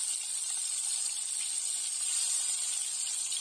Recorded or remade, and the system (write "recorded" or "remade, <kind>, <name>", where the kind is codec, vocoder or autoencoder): recorded